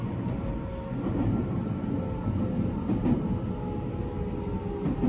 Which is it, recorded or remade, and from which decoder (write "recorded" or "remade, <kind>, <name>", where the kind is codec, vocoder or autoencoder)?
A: recorded